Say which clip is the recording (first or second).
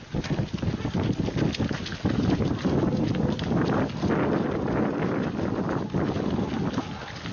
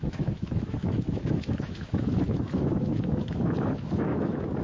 first